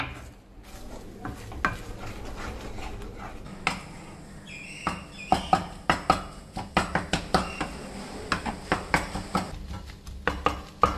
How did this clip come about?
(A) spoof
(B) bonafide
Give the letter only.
B